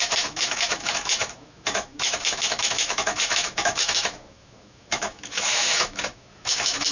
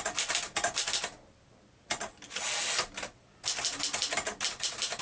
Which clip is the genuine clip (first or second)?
second